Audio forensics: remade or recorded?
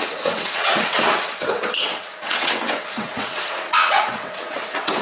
remade